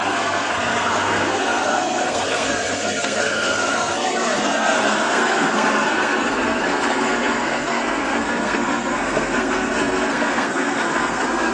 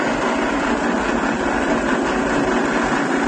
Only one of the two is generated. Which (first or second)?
first